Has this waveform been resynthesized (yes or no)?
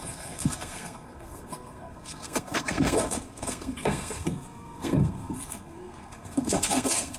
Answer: yes